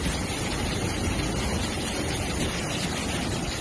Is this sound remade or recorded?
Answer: recorded